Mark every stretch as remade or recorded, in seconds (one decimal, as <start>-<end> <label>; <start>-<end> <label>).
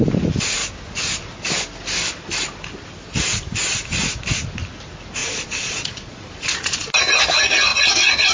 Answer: 0.0-5.2 recorded; 5.2-6.9 remade; 6.9-8.3 recorded